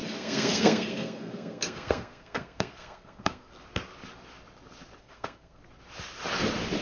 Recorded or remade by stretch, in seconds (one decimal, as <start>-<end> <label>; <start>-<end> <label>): 0.0-3.5 remade; 3.5-5.0 recorded; 5.0-5.6 remade; 5.6-6.8 recorded